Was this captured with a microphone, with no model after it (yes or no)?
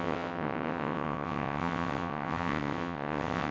no